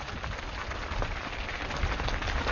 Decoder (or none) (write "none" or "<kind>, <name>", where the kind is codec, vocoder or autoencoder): none